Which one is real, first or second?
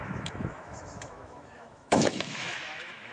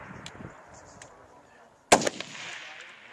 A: second